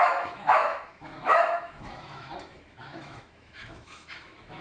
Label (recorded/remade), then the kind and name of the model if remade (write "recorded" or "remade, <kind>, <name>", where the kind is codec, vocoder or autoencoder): remade, autoencoder, DAC-VAE